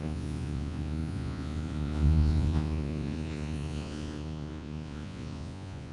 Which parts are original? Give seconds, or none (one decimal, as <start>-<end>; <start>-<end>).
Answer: none